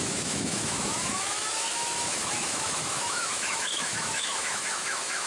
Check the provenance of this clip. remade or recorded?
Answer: remade